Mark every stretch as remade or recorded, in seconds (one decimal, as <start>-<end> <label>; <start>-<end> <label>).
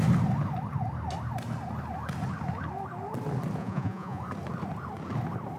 0.0-3.6 recorded; 3.6-4.2 remade; 4.2-5.6 recorded